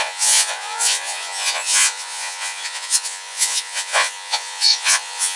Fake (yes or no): yes